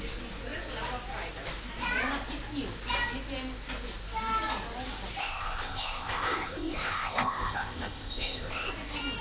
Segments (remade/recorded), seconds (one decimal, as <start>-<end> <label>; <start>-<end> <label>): 0.0-5.2 recorded; 5.2-8.7 remade; 8.7-9.2 recorded